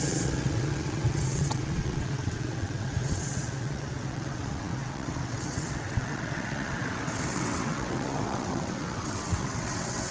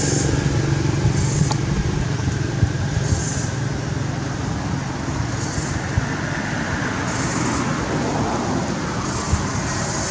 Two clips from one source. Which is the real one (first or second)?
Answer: second